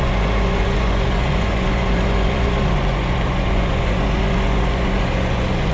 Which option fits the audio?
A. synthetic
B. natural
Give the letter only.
A